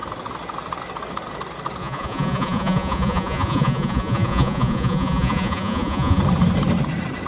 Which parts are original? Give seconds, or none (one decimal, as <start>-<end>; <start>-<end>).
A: 0.0-1.8; 6.2-7.3